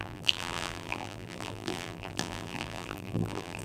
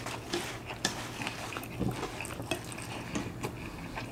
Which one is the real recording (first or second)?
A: second